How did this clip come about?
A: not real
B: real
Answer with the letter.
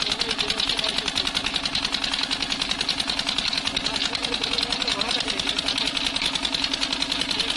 B